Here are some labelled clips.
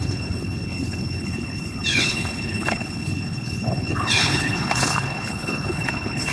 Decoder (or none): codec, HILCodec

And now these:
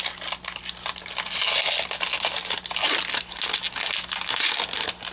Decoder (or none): none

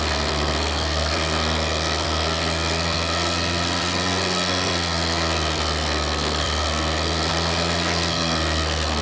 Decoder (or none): codec, SNAC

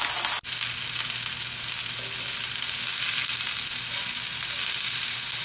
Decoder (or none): none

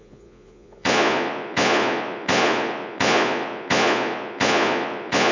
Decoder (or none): vocoder, Vocos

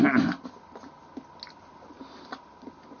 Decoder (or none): none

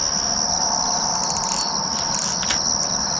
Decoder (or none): none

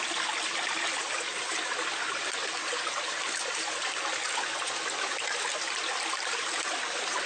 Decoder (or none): none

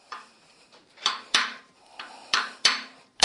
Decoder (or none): vocoder, BigVGAN v2